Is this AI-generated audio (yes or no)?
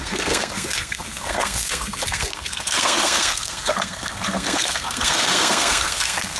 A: yes